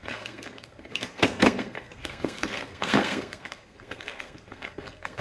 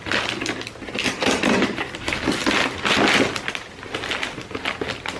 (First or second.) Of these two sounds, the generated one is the first